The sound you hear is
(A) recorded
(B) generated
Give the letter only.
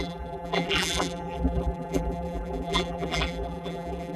B